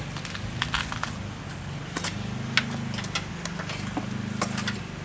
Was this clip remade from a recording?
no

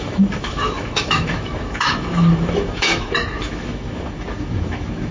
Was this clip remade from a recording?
yes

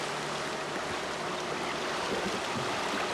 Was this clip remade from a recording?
no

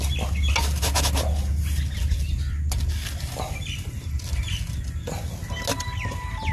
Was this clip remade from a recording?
no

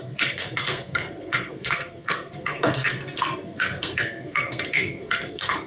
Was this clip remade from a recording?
yes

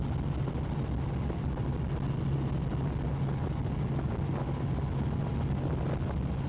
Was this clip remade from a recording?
no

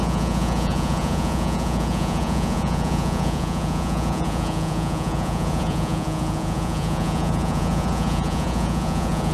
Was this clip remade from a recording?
yes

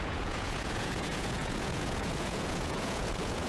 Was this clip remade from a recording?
yes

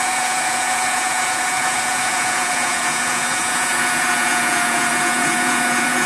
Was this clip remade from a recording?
yes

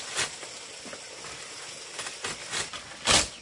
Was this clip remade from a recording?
no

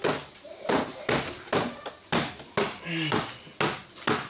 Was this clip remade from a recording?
no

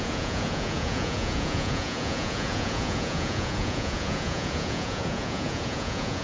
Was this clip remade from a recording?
yes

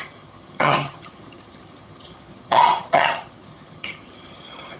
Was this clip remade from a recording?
yes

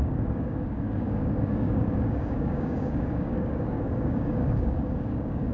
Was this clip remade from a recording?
yes